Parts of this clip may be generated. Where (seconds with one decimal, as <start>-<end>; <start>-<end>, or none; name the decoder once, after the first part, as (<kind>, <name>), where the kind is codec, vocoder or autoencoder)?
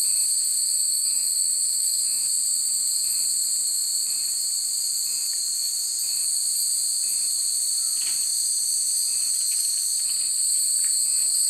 0.6-2.2 (autoencoder, DAC-VAE)